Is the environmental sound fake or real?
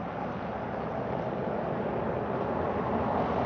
real